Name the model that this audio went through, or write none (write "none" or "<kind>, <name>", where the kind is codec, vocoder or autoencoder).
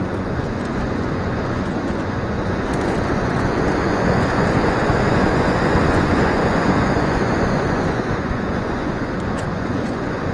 vocoder, Vocos